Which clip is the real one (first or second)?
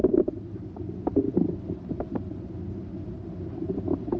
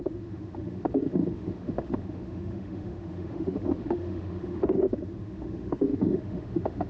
first